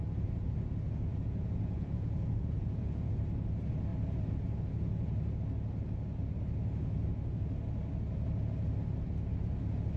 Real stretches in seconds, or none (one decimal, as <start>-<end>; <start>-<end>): 0.0-1.1; 3.1-10.0